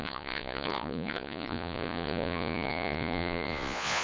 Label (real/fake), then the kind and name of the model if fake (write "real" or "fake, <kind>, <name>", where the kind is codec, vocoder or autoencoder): fake, vocoder, Vocos